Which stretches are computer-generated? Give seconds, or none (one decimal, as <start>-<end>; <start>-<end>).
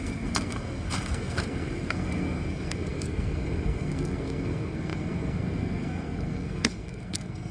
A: 0.0-7.5